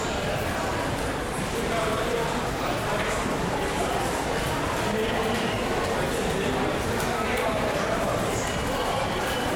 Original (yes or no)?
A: yes